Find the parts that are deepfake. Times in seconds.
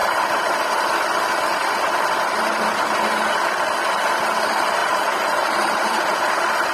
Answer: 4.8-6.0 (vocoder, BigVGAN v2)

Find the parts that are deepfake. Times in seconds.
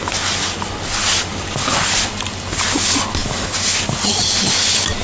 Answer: 1.3-2.1 (vocoder, BigVGAN v2); 3.2-4.1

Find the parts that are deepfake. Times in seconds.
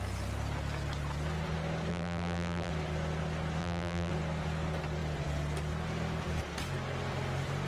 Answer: 1.9-2.7 (vocoder, BigVGAN v2); 3.6-4.1